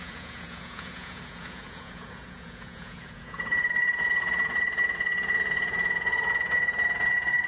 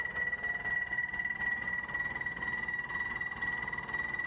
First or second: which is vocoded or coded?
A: first